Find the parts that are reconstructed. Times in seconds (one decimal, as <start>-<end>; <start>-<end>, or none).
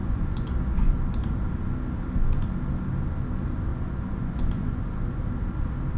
0.0-0.9; 3.7-5.2